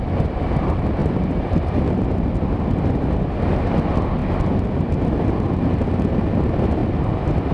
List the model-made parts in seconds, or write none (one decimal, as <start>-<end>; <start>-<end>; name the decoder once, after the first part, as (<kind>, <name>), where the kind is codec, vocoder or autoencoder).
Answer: 1.0-1.8 (vocoder, BigVGAN v2)